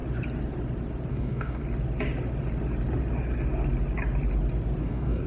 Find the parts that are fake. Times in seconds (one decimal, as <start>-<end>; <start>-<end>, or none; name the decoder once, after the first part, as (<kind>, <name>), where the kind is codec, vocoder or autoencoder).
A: 1.1-1.6 (codec, DAC); 4.8-5.3